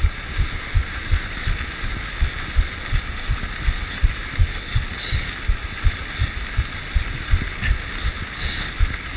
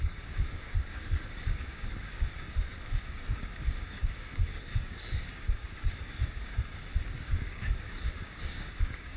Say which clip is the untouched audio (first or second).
first